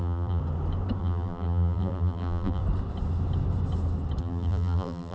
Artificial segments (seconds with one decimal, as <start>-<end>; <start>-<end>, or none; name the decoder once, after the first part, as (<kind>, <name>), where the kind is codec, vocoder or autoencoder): 0.0-0.4 (vocoder, BigVGAN v2); 1.0-2.6; 4.2-5.1